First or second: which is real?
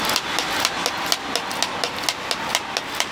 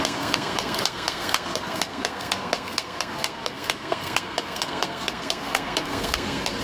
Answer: first